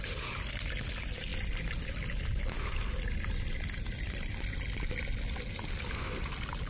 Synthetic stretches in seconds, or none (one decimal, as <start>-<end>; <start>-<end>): none